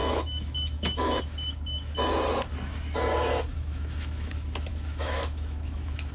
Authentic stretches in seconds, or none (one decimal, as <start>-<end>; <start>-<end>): 1.2-3.5; 4.3-4.7